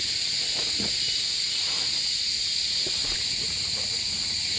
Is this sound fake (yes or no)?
yes